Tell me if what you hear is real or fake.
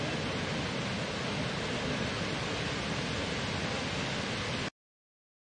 real